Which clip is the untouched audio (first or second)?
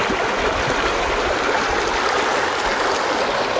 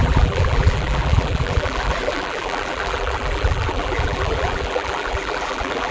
first